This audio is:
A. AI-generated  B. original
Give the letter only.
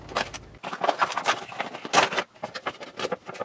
B